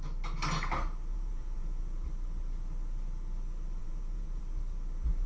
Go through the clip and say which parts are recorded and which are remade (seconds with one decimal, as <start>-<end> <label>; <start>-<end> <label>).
0.0-1.1 recorded; 1.1-1.8 remade; 1.8-3.8 recorded; 3.8-4.4 remade; 4.4-5.3 recorded